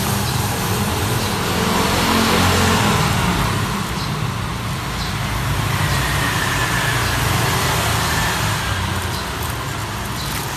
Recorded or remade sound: recorded